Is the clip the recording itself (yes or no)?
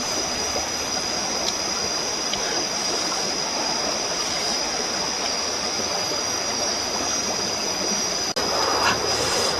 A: yes